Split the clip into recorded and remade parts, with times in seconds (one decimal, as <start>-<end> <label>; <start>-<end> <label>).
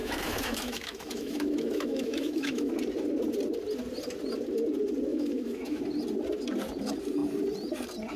0.0-2.7 remade; 2.7-5.1 recorded; 5.1-5.8 remade; 5.8-8.2 recorded